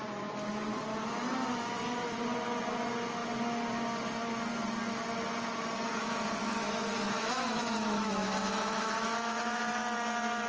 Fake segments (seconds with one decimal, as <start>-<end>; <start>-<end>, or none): 6.0-9.6